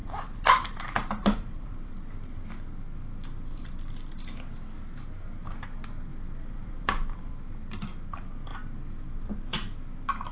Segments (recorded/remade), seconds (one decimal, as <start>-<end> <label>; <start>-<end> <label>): 0.0-1.9 remade; 1.9-6.1 recorded; 6.1-7.3 remade; 7.3-10.3 recorded

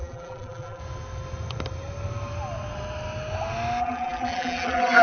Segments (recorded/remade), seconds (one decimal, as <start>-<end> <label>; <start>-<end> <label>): 0.0-0.8 remade; 0.8-3.8 recorded; 3.8-5.0 remade

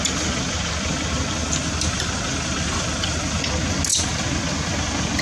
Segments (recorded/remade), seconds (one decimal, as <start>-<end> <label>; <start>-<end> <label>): 0.0-1.4 recorded; 1.4-3.4 remade; 3.4-5.2 recorded

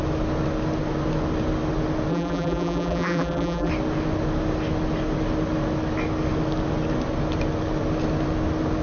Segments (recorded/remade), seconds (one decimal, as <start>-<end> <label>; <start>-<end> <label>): 0.0-2.1 recorded; 2.1-3.7 remade; 3.7-8.8 recorded

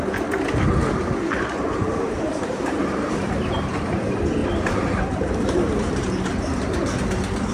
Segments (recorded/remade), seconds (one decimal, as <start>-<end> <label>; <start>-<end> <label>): 0.0-1.8 recorded; 1.8-3.2 remade; 3.2-4.4 recorded; 4.4-6.3 remade; 6.3-7.5 recorded

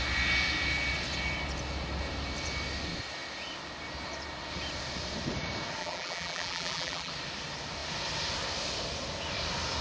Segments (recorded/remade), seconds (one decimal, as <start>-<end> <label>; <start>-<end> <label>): 0.0-5.8 recorded; 5.8-7.1 remade; 7.1-9.8 recorded